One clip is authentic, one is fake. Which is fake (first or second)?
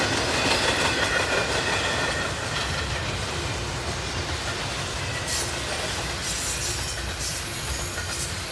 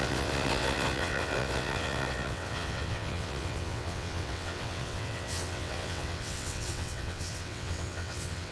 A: second